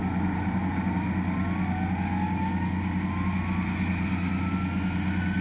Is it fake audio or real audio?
real